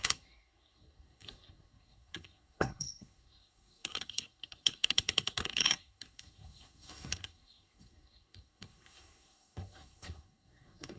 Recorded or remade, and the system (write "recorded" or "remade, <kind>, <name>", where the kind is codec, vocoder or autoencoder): remade, codec, SNAC